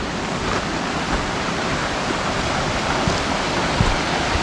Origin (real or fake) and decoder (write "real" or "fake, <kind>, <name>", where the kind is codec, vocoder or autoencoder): real